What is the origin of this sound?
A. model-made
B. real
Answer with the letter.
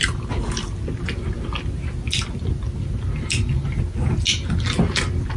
B